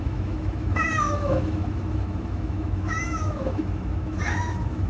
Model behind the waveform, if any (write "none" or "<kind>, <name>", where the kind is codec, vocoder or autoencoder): autoencoder, DAC-VAE